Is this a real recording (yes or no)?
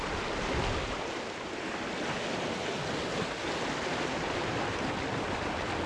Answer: yes